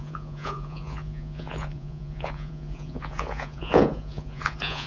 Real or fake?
fake